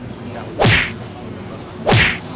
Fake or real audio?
real